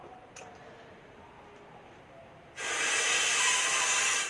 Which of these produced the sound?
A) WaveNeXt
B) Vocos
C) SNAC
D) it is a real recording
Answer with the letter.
D